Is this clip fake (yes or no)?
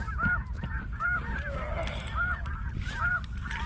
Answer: no